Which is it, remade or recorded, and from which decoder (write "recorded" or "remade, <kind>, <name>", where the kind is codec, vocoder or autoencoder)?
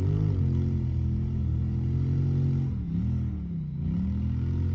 recorded